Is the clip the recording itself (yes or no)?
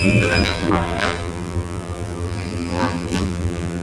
no